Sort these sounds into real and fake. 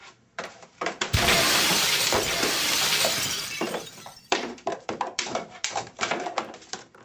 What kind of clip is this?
fake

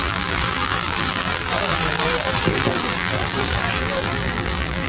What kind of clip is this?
fake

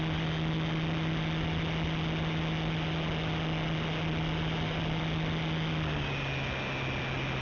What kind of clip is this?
fake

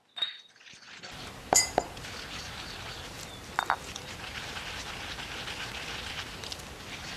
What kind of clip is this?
real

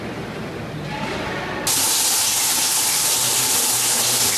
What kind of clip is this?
real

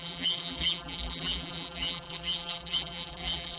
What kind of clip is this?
fake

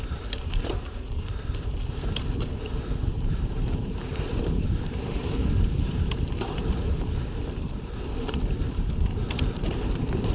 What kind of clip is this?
fake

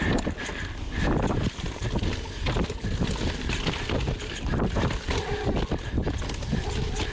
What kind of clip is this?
real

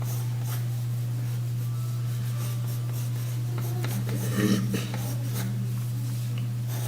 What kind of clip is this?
real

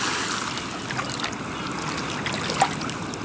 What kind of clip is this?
real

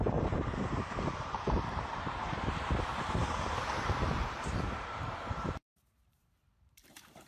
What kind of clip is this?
fake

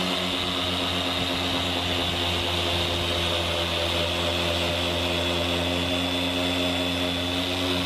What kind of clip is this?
real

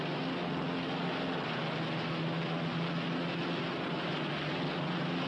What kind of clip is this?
real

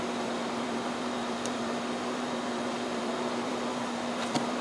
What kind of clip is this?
fake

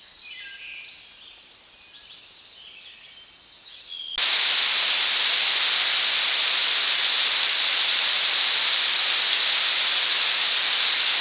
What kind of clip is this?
real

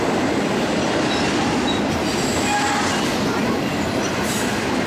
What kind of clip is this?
real